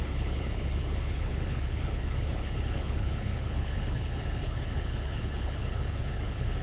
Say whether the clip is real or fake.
fake